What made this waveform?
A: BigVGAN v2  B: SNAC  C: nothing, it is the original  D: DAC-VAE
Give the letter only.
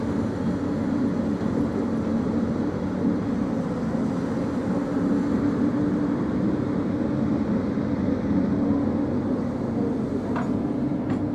C